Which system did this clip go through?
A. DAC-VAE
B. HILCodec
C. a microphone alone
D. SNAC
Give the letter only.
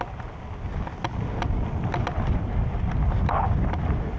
C